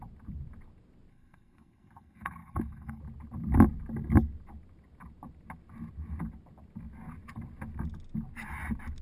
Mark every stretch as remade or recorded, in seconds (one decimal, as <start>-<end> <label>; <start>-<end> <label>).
0.0-1.1 recorded; 1.1-3.0 remade; 3.0-9.0 recorded